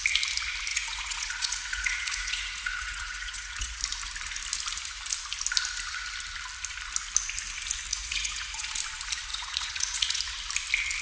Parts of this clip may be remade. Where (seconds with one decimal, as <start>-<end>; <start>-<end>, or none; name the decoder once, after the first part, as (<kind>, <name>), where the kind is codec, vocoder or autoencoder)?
0.7-3.8 (vocoder, Vocos); 7.9-8.8; 9.3-10.2